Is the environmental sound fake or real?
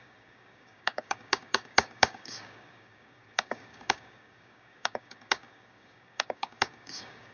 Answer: fake